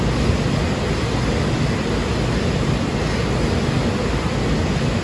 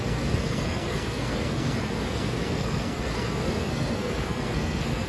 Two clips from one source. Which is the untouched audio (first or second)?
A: first